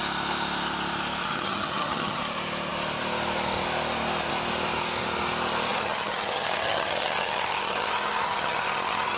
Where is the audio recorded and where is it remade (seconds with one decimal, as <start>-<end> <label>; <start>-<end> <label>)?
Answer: 0.0-1.2 recorded; 1.2-2.2 remade; 2.2-5.7 recorded; 5.7-9.2 remade